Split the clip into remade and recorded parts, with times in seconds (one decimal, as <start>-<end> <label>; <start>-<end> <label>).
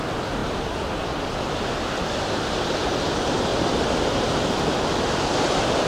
0.0-5.9 recorded